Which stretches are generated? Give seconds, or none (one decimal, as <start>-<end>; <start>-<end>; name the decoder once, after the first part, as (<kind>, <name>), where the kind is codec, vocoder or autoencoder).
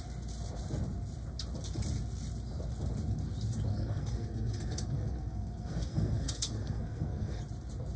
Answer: 3.7-7.4 (codec, SNAC)